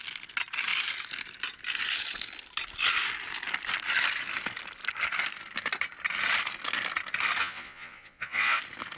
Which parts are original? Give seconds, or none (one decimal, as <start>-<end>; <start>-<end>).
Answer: 0.0-7.4; 8.6-9.0